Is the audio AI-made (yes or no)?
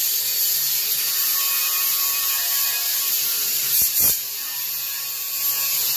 yes